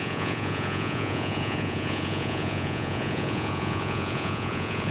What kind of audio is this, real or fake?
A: fake